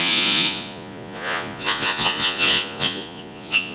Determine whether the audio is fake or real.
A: fake